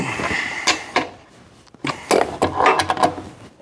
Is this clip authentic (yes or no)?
yes